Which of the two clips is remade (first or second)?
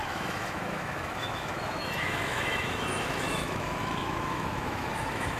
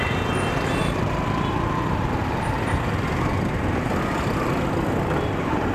first